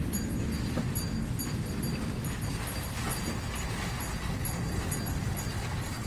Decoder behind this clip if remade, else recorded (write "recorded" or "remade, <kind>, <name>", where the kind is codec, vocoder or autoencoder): recorded